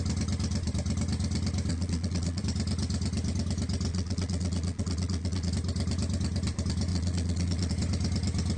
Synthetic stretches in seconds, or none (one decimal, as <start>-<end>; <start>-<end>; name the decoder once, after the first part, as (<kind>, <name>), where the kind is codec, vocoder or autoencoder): 1.7-2.4 (vocoder, Vocos); 3.9-5.5; 6.9-7.7